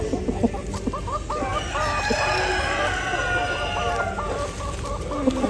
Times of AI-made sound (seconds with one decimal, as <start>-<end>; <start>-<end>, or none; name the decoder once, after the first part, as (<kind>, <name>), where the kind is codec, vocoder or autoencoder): none